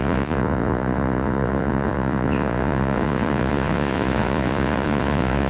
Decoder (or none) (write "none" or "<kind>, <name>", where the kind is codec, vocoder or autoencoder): vocoder, Vocos